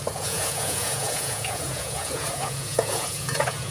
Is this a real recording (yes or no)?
no